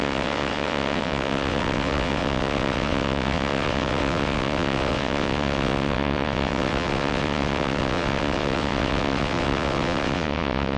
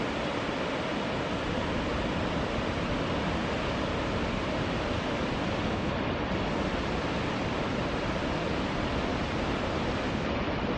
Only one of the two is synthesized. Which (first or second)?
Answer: first